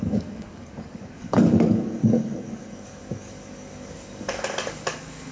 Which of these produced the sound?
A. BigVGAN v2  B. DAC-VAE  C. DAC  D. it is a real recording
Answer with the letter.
C